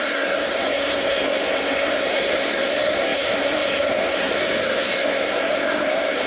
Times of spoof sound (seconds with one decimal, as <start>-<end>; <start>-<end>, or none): 0.0-6.3